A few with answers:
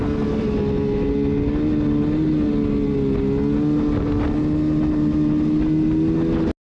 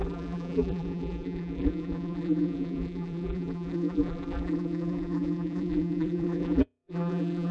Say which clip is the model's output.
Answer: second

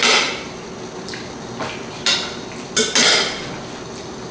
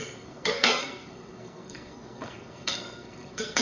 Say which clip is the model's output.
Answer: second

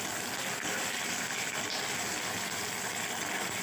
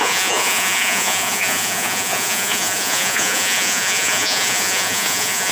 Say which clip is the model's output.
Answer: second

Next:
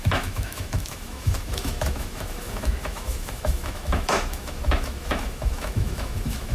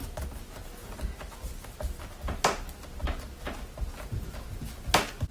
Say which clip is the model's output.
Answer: first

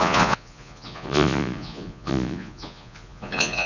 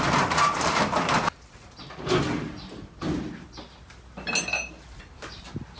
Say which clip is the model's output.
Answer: first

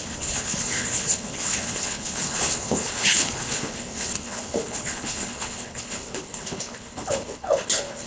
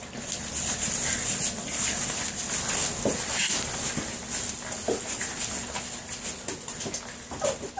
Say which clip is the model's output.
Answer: first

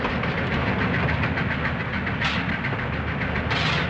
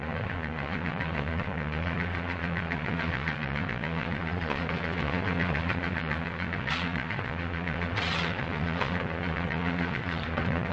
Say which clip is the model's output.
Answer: second